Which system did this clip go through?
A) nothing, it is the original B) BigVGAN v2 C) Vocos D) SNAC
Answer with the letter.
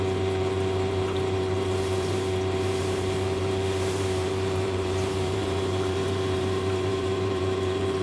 B